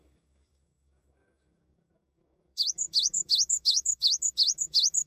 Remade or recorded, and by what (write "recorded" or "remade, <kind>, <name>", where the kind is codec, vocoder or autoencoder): remade, codec, DAC